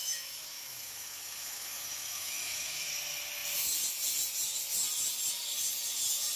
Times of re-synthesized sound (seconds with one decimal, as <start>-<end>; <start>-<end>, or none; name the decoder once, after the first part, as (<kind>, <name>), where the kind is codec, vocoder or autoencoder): 0.0-2.9 (autoencoder, DAC-VAE)